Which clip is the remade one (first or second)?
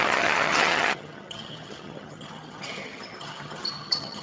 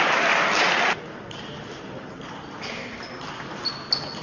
first